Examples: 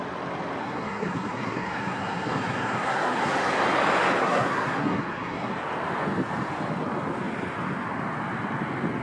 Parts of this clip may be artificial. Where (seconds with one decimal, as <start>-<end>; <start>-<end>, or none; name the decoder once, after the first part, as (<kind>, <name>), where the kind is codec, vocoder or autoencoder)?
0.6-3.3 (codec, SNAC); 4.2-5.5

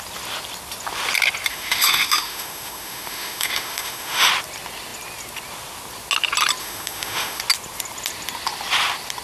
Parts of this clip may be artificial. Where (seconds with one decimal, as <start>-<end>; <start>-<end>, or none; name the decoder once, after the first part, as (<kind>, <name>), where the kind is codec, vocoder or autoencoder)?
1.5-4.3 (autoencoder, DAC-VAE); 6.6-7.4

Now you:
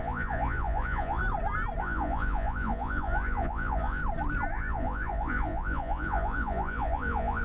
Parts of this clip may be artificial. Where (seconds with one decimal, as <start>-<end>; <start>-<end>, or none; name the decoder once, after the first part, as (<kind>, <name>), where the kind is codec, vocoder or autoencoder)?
0.0-1.2 (vocoder, Vocos); 1.8-4.0; 4.5-7.4

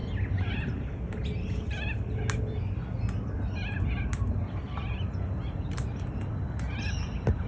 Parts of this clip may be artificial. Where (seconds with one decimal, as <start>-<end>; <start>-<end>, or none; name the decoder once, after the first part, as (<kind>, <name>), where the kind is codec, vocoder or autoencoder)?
none